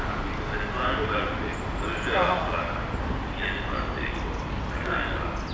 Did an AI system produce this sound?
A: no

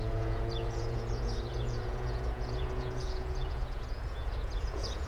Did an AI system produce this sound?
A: yes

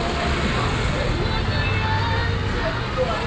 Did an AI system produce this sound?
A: no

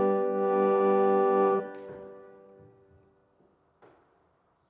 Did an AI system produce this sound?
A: no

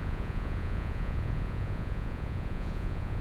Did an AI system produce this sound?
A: yes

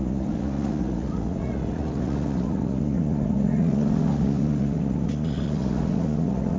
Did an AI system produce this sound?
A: yes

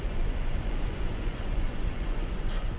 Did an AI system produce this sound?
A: yes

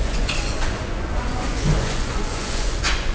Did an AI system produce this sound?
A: yes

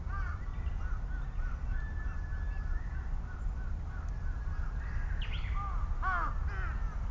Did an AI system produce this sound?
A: no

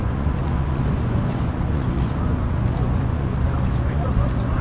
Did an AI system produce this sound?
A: yes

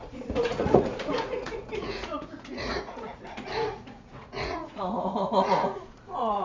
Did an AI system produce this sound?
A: yes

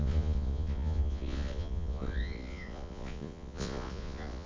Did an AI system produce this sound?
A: yes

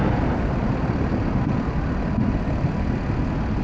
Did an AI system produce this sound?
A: no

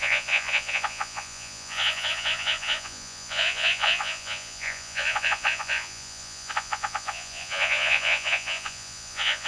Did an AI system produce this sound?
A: yes